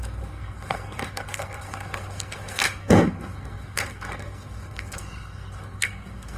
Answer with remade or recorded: remade